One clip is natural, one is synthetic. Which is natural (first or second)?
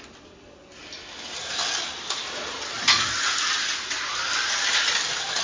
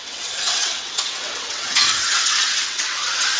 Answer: first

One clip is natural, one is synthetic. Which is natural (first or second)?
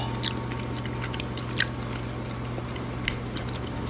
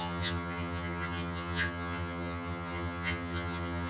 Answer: first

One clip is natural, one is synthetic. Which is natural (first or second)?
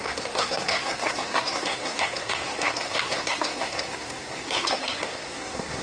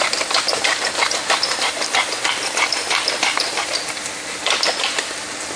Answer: second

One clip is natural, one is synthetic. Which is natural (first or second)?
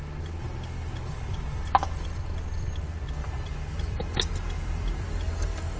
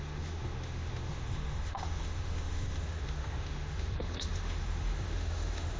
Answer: first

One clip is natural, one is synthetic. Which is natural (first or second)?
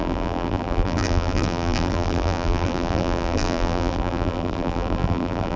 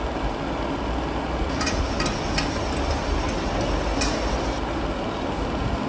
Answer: second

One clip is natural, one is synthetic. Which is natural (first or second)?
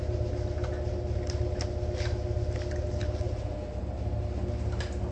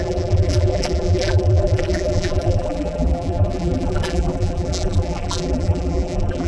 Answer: first